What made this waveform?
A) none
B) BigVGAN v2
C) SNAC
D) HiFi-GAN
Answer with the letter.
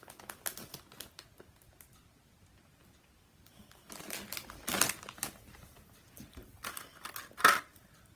A